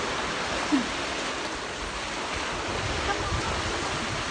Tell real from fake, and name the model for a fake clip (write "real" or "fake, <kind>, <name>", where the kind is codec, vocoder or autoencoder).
real